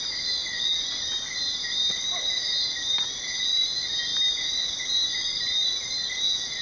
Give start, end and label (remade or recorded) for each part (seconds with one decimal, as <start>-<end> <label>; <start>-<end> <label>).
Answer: 0.0-6.6 recorded